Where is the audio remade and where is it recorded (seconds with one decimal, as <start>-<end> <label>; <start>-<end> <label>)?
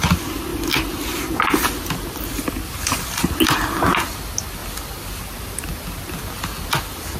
0.0-7.2 recorded